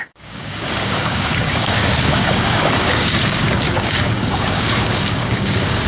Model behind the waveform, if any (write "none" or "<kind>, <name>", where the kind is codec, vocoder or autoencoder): codec, DAC